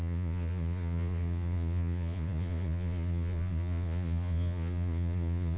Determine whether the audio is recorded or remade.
remade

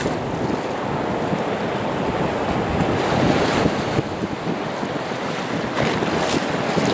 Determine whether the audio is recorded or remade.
recorded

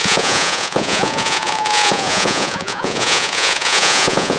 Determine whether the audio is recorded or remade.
remade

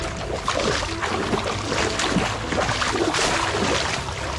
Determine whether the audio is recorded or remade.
recorded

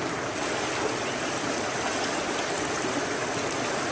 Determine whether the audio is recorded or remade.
recorded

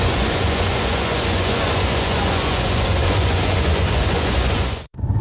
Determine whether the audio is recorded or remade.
remade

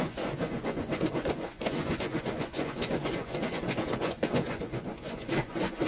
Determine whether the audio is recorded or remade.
remade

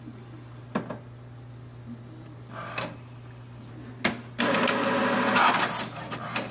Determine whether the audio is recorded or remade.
recorded